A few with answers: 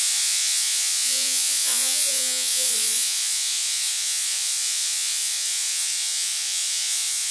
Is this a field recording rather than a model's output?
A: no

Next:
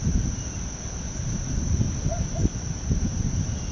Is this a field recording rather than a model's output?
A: yes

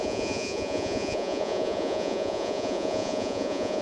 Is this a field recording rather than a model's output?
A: no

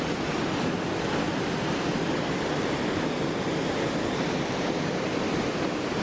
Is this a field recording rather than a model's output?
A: yes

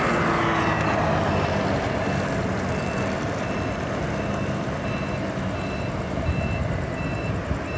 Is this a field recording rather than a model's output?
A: yes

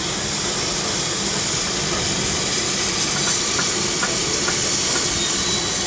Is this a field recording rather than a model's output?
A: yes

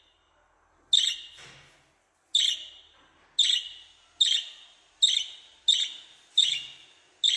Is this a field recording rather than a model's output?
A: yes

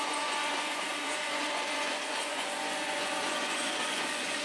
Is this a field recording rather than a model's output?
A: no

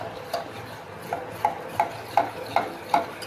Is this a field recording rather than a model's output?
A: yes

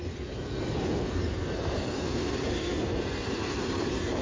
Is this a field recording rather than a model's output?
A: yes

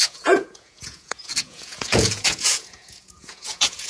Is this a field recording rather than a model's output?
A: no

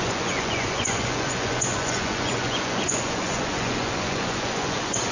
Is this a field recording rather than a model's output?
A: no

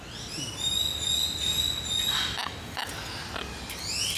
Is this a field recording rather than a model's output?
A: yes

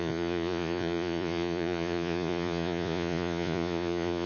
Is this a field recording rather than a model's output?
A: no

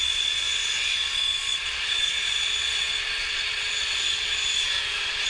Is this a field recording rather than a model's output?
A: no